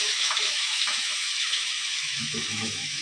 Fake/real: fake